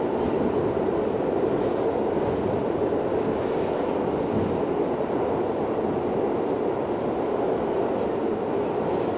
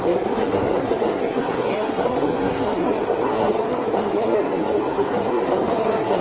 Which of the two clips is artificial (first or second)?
second